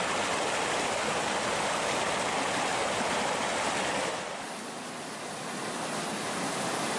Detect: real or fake real